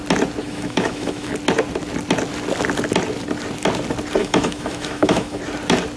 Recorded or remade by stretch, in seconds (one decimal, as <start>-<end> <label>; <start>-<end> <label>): 0.0-0.4 recorded; 0.4-1.3 remade; 1.3-4.2 recorded; 4.2-5.4 remade; 5.4-6.0 recorded